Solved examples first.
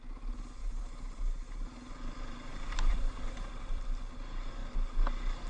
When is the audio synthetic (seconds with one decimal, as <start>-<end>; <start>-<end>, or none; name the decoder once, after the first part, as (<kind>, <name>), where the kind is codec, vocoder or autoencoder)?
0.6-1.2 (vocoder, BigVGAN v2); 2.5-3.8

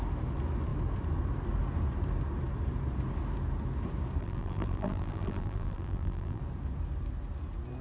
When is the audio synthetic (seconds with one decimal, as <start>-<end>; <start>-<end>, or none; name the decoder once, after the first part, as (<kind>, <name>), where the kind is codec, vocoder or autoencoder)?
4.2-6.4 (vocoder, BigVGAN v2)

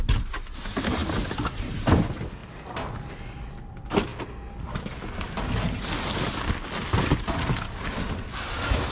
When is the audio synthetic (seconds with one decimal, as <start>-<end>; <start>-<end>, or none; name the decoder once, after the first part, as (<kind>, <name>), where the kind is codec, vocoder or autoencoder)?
1.0-1.8 (vocoder, BigVGAN v2)

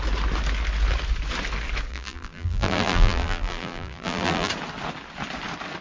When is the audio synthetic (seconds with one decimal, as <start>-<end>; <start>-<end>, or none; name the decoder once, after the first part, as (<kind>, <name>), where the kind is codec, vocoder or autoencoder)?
1.9-4.5 (vocoder, BigVGAN v2)